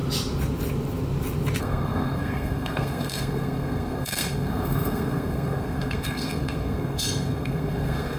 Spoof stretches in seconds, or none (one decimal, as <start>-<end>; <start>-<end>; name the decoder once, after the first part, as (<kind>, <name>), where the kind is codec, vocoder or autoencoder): 1.6-8.2 (codec, SNAC)